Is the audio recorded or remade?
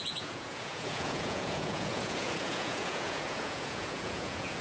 remade